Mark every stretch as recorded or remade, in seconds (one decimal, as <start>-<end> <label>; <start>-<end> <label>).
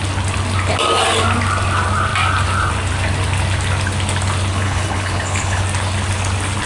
0.0-4.5 recorded; 4.5-5.6 remade; 5.6-6.7 recorded